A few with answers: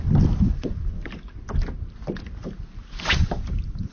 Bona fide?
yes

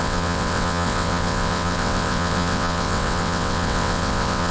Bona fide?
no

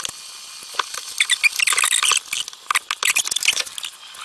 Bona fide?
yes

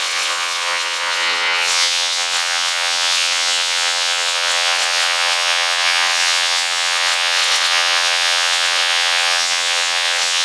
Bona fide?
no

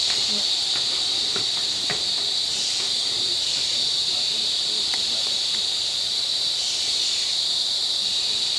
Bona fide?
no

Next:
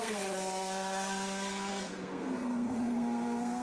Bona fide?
no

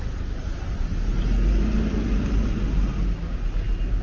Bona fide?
yes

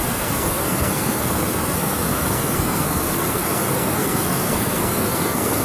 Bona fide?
no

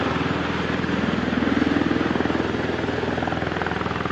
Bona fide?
yes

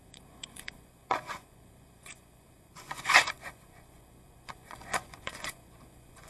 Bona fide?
no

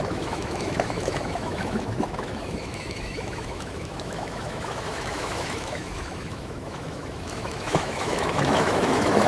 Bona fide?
no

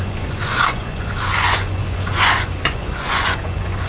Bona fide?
no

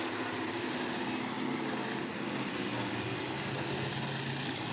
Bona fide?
yes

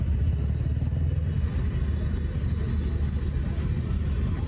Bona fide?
yes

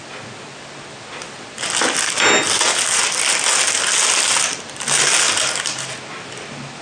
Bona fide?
yes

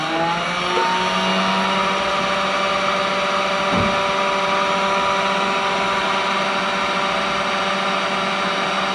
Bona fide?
yes